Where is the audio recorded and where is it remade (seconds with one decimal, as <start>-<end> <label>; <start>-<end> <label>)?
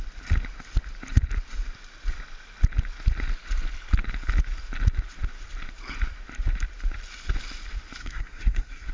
0.0-8.0 recorded; 8.0-8.9 remade